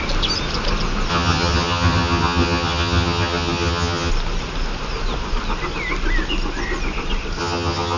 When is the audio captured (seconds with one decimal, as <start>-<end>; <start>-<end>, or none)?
0.0-1.1; 4.1-7.4